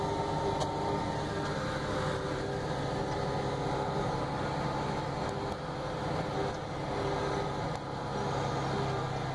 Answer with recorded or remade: recorded